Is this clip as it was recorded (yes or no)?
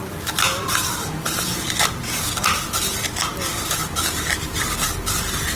no